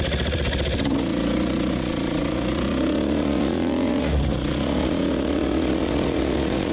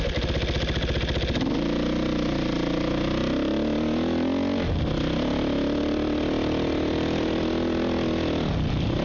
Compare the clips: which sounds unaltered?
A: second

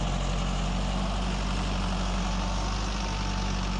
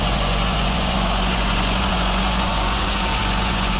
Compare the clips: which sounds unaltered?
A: first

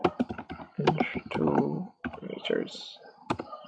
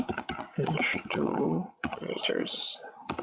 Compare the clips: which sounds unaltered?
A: first